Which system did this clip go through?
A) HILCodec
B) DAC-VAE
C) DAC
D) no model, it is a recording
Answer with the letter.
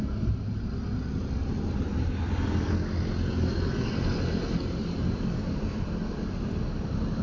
D